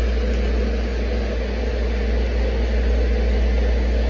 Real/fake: real